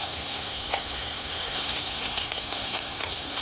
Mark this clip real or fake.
fake